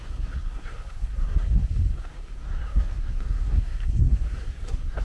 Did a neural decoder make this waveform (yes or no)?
yes